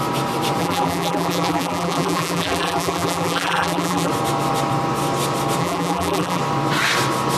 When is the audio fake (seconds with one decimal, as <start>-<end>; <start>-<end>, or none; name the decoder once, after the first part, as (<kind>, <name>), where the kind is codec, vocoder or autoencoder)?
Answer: 0.6-4.1 (vocoder, BigVGAN v2); 5.6-6.4